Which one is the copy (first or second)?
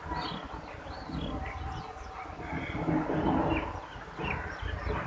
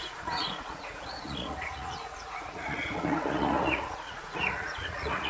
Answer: second